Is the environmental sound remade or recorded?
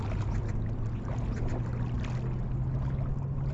recorded